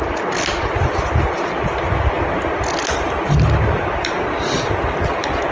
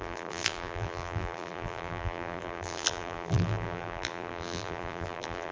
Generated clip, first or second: second